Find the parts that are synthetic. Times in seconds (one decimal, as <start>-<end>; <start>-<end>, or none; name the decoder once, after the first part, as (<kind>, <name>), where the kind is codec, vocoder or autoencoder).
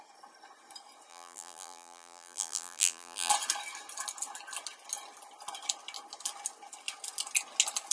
1.1-3.3 (vocoder, BigVGAN v2)